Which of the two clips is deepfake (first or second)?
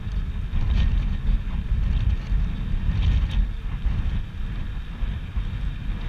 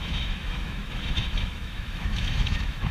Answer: second